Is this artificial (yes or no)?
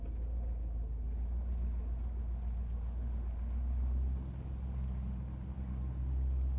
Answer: no